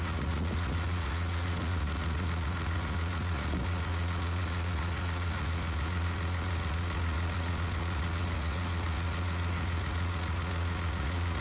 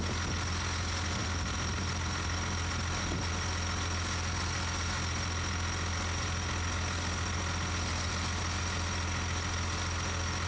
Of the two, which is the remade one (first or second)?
first